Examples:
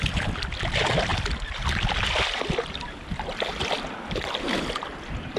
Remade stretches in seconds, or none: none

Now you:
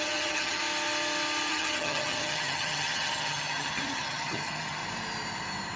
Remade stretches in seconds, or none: 0.0-0.6 (vocoder, HiFi-GAN); 1.5-4.8